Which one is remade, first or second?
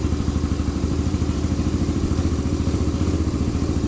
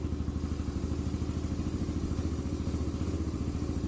first